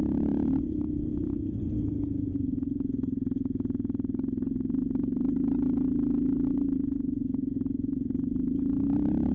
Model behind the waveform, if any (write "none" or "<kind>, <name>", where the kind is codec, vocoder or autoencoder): none